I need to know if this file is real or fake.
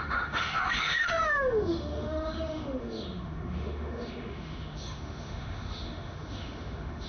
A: fake